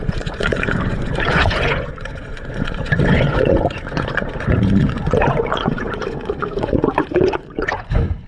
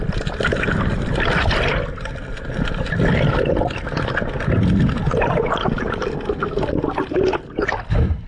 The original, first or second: second